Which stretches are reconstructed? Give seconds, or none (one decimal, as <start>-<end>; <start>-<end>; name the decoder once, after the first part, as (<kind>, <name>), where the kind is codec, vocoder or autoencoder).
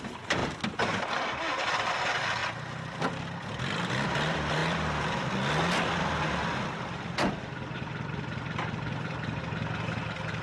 none